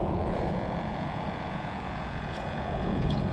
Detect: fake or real fake